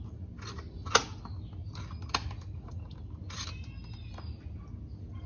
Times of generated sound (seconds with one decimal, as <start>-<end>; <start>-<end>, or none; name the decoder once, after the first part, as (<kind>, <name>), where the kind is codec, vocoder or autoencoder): none